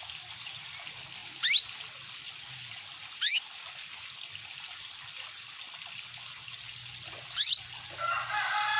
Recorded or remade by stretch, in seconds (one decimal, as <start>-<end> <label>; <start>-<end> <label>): 0.0-8.8 recorded